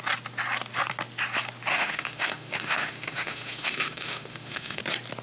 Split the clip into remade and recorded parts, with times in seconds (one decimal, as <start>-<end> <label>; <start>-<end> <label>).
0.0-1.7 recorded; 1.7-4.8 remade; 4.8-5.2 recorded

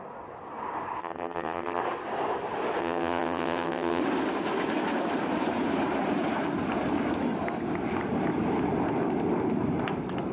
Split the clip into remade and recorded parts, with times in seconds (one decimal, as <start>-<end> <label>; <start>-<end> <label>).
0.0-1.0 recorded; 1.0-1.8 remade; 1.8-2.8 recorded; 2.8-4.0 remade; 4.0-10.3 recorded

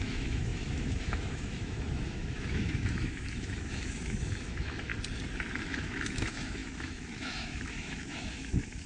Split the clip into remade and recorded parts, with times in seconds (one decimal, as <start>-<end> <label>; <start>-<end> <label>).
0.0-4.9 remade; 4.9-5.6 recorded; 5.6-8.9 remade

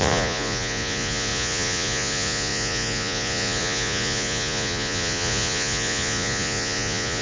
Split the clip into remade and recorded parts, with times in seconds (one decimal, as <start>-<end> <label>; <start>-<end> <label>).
0.0-7.2 remade

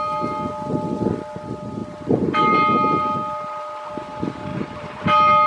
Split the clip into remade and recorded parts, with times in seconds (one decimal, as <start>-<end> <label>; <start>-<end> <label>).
0.0-4.5 recorded; 4.5-5.0 remade; 5.0-5.5 recorded

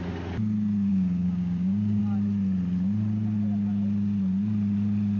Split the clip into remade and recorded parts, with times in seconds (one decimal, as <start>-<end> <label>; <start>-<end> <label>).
0.0-0.9 recorded; 0.9-2.0 remade; 2.0-5.2 recorded